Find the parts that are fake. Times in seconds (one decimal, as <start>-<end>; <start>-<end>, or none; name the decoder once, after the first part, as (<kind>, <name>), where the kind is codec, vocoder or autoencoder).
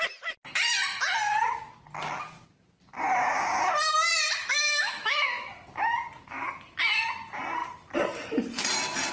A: 4.4-5.5 (autoencoder, DAC-VAE)